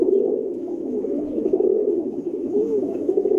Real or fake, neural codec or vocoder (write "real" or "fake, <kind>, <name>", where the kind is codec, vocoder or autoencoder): fake, autoencoder, DAC-VAE